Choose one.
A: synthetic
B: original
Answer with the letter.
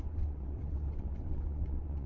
A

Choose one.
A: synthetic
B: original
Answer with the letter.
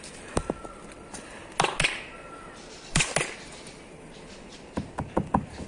B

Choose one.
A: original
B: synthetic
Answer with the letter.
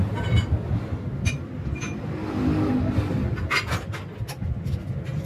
A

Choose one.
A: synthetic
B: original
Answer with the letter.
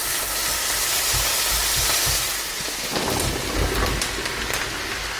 B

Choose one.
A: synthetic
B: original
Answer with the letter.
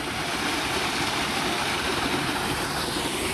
A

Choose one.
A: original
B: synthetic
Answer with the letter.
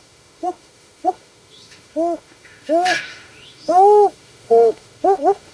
B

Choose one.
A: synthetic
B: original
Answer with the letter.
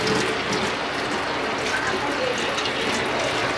B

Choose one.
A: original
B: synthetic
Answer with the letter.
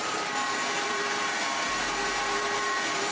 B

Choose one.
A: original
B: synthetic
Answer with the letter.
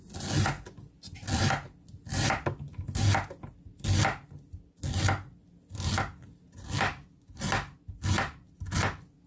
A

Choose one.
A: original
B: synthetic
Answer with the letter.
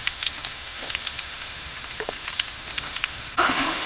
B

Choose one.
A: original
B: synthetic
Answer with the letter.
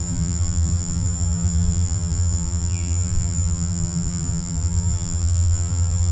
B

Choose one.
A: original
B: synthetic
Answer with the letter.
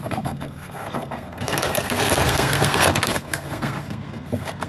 B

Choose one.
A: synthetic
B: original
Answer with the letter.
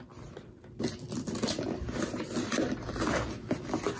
B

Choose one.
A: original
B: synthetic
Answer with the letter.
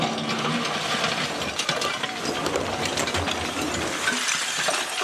A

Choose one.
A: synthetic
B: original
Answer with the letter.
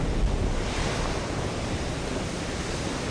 B